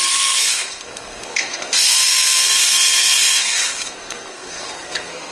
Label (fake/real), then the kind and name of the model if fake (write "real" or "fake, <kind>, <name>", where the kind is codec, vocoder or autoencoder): fake, codec, SNAC